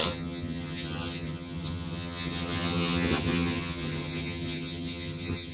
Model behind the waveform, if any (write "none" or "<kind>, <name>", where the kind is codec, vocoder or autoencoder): vocoder, HiFi-GAN